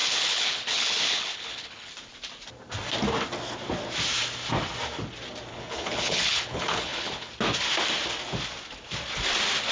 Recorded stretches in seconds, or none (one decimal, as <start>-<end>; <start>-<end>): 1.9-5.5; 7.3-9.7